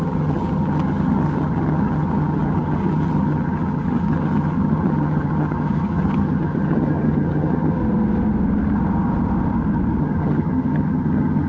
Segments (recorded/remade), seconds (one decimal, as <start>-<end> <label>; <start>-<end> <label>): 0.0-7.8 remade; 7.8-10.0 recorded; 10.0-11.5 remade